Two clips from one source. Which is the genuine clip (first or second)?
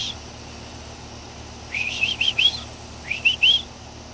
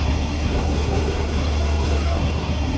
first